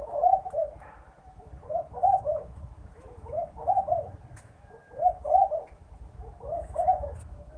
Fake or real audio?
fake